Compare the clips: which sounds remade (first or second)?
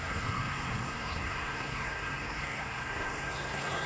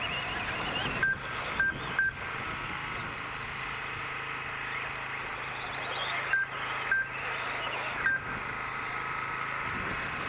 first